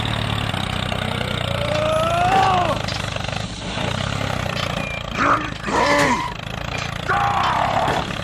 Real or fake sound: real